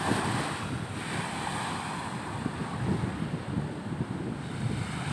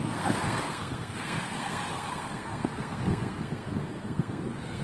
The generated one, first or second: second